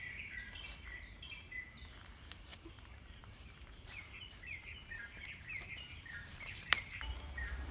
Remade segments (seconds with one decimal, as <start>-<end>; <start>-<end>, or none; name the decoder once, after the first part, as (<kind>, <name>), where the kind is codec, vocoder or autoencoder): 0.0-7.7 (vocoder, BigVGAN v2)